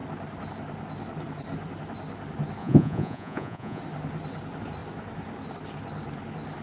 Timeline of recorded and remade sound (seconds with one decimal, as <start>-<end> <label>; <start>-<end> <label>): 0.0-2.6 recorded; 2.6-3.8 remade; 3.8-6.6 recorded